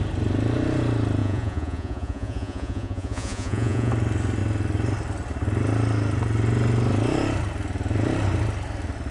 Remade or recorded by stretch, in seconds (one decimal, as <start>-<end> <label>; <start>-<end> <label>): 0.0-1.2 recorded; 1.2-3.9 remade; 3.9-9.1 recorded